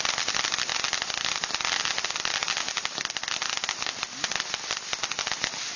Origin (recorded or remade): recorded